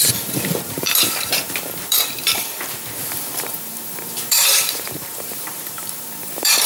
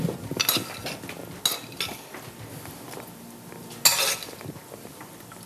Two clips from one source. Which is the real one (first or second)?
second